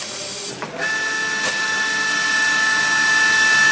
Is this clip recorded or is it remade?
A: recorded